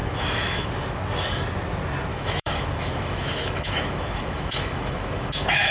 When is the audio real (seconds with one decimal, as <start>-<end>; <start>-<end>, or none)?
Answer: 0.7-2.1